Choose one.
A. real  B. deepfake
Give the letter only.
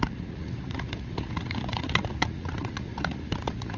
B